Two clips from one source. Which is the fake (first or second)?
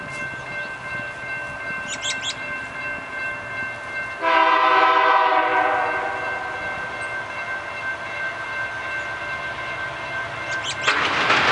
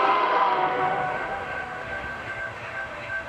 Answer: second